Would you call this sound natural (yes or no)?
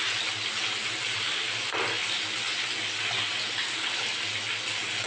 yes